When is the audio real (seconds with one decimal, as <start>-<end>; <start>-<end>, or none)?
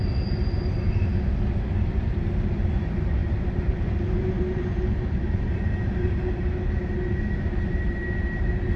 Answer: 0.0-3.2; 6.2-8.8